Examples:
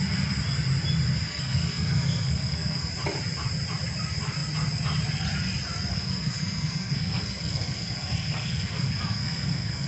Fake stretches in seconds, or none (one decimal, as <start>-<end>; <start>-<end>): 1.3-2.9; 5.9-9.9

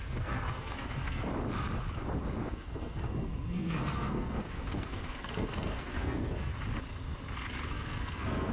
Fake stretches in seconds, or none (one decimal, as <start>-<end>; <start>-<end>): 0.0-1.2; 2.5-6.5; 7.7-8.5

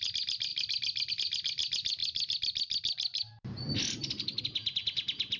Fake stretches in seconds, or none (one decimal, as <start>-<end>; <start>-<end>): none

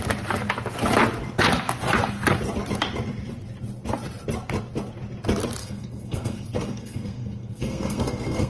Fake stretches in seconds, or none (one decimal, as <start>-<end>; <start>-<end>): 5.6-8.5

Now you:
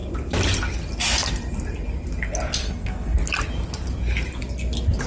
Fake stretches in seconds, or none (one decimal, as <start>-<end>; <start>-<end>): 2.6-3.2

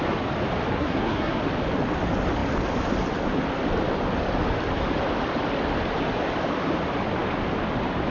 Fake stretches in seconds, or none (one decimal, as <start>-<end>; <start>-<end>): 0.7-1.4

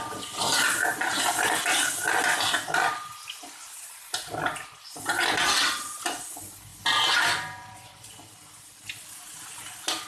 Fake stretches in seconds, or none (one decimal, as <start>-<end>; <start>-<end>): none